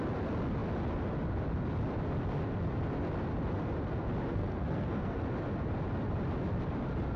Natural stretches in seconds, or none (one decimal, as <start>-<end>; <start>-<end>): 0.0-4.3; 5.2-7.2